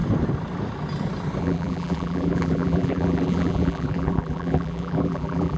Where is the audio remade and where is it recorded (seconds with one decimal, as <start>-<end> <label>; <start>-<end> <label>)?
0.0-1.4 recorded; 1.4-5.6 remade